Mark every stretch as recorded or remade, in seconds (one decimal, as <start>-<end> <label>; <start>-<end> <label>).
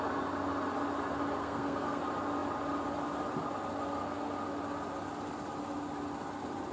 0.0-1.4 recorded; 1.4-2.0 remade; 2.0-6.7 recorded